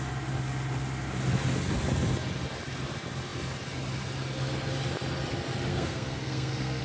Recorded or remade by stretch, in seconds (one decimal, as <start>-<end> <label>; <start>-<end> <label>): 0.0-5.7 recorded; 5.7-6.8 remade